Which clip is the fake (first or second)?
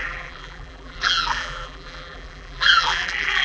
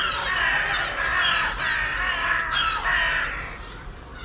first